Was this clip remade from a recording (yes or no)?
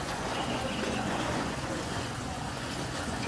yes